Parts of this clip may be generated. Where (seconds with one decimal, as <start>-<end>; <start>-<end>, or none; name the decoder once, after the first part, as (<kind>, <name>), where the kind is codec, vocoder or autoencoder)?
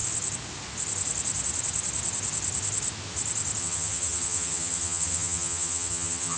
3.6-6.4 (vocoder, HiFi-GAN)